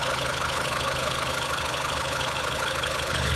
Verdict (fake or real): fake